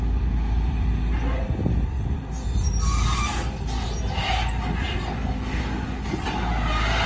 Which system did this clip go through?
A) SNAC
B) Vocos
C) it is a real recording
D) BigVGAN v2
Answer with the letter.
C